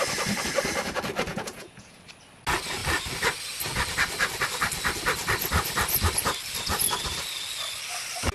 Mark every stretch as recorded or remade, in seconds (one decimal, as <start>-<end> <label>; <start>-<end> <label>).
0.0-1.3 recorded; 1.3-2.0 remade; 2.0-8.3 recorded